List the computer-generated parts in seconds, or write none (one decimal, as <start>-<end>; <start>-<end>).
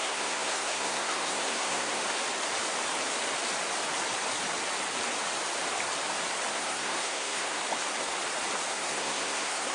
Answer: 0.0-2.0; 6.5-7.6; 8.7-9.7